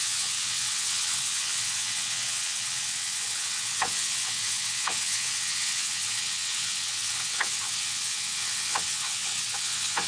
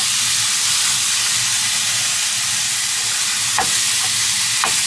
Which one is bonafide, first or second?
second